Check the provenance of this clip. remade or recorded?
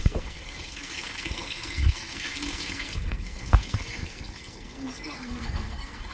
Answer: remade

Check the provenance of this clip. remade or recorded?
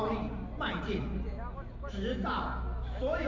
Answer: recorded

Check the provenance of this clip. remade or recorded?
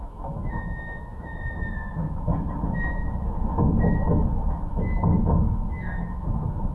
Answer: remade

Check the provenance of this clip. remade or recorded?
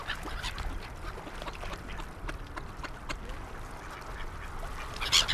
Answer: recorded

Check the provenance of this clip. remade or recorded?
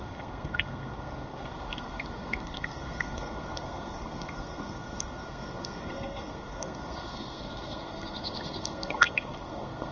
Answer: remade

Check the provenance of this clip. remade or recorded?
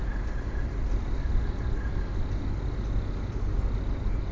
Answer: recorded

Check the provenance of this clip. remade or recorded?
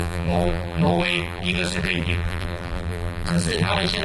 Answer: remade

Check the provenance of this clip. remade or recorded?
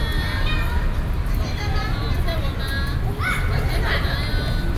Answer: recorded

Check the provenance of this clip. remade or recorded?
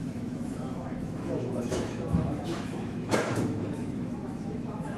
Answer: remade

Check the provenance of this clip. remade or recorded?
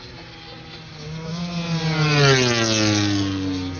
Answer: recorded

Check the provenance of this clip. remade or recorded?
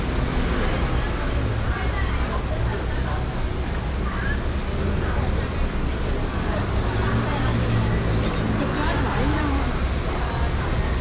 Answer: recorded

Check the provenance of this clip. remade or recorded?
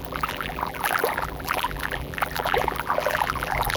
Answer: remade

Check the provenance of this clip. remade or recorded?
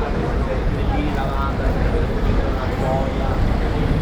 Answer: recorded